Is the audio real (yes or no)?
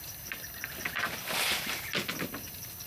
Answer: yes